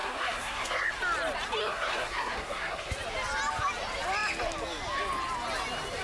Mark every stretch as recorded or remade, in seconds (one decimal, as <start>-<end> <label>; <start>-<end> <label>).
0.0-0.9 remade; 0.9-1.6 recorded; 1.6-2.9 remade; 2.9-6.0 recorded